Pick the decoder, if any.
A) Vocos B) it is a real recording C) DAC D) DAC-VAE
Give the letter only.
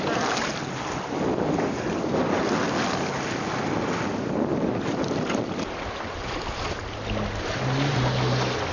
B